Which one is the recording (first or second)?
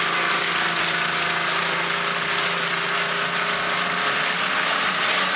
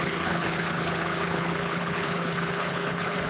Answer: first